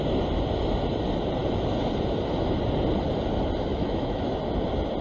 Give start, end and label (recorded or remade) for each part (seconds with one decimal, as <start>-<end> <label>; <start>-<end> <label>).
0.0-3.7 recorded; 3.7-4.2 remade; 4.2-5.0 recorded